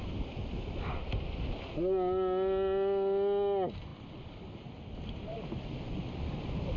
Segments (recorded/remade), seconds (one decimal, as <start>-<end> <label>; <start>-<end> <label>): 0.0-6.8 recorded

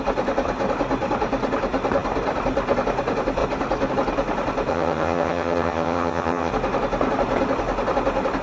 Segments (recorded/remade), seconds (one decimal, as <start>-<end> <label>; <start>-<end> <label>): 0.0-4.7 recorded; 4.7-6.5 remade; 6.5-8.4 recorded

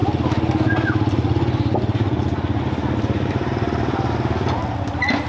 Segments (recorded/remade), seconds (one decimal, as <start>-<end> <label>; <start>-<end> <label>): 0.0-5.3 recorded